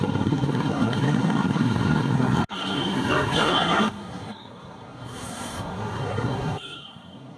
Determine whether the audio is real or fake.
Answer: fake